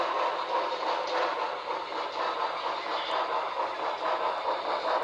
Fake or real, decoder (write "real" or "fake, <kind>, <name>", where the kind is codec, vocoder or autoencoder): real